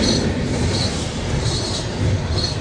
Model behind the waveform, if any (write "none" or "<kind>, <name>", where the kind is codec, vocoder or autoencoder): none